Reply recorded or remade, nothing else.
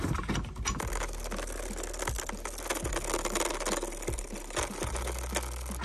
recorded